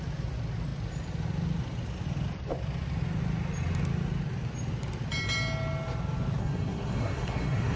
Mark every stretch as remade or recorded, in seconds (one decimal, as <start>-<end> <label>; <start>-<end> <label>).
0.0-6.4 recorded; 6.4-7.8 remade